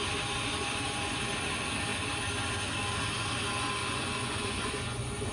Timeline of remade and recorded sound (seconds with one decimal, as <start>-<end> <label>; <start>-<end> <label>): 0.0-0.6 recorded; 0.6-1.2 remade; 1.2-3.8 recorded; 3.8-5.3 remade